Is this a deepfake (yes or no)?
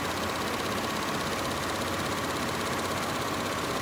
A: no